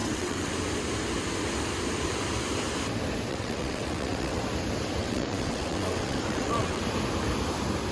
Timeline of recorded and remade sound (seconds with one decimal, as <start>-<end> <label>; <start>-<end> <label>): 0.0-0.5 remade; 0.5-3.3 recorded; 3.3-4.4 remade; 4.4-5.0 recorded; 5.0-6.8 remade; 6.8-7.9 recorded